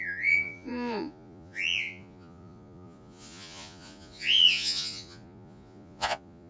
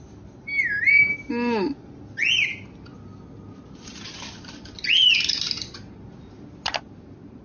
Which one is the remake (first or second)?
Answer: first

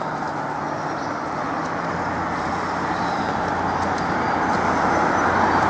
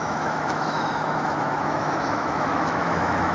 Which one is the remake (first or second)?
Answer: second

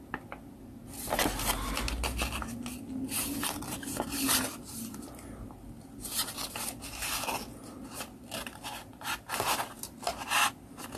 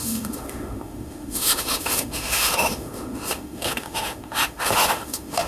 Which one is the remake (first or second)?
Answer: second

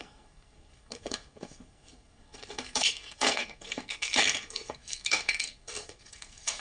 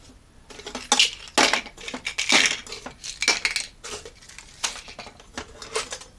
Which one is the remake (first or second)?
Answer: first